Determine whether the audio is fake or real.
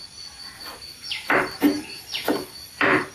fake